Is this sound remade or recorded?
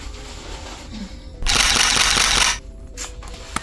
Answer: recorded